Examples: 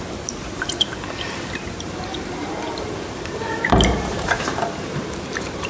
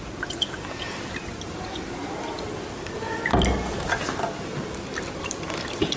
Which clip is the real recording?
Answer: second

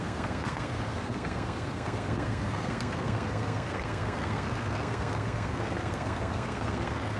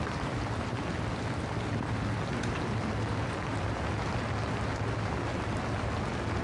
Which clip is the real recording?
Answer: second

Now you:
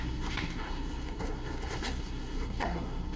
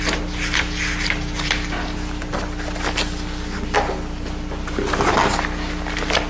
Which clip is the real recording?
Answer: second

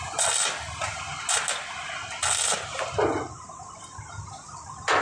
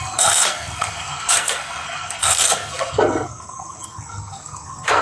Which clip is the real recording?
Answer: first